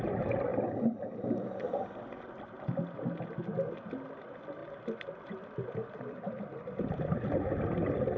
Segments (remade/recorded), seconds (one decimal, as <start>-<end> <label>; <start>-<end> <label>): 0.0-0.5 recorded; 0.5-2.1 remade; 2.1-4.6 recorded; 4.6-7.4 remade; 7.4-8.2 recorded